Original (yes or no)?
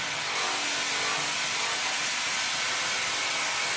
yes